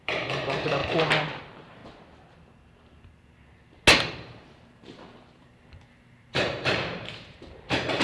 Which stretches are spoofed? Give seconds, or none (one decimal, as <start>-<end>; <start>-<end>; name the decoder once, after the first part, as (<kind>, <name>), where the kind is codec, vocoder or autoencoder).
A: 0.0-0.8 (vocoder, BigVGAN v2); 1.4-1.8; 4.1-8.0